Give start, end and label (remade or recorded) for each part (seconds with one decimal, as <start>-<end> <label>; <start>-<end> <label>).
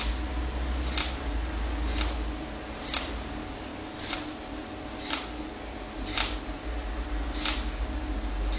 0.0-8.6 recorded